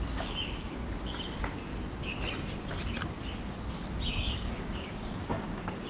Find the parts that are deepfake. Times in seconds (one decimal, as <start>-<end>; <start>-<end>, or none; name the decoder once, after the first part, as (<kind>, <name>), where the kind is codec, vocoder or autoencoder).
0.0-0.8 (codec, DAC); 4.3-5.9